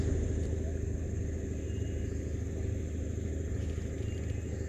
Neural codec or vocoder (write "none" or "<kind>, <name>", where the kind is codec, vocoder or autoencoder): none